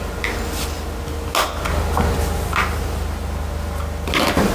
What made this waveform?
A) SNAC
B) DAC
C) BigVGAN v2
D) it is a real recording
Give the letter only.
D